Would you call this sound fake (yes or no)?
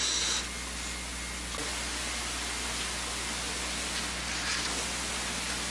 no